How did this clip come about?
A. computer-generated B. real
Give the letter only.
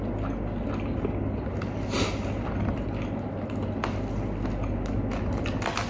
B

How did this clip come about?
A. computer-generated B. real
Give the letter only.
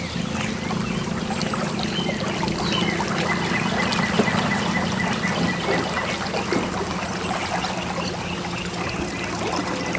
B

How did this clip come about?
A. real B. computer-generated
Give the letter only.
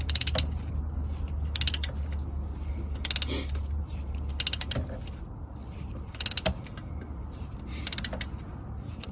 A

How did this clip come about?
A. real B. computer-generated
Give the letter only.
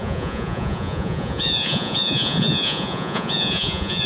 B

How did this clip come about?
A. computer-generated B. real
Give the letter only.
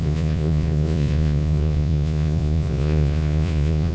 A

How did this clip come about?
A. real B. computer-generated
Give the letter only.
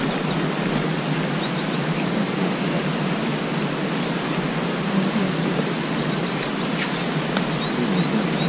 A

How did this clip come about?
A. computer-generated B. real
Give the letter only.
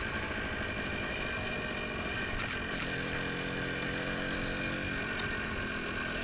B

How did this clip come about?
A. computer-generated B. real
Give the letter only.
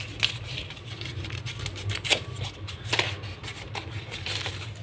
B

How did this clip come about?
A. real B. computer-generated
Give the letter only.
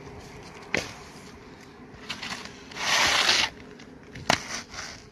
A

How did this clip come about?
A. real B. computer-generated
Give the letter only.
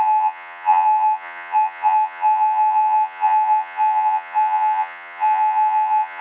B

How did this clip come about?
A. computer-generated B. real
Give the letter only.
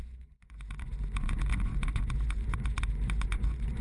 A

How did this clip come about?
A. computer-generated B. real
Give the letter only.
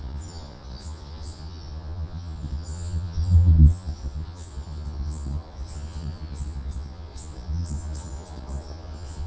A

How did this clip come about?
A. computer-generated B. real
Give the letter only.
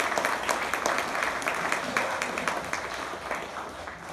B